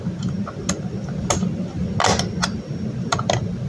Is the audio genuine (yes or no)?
yes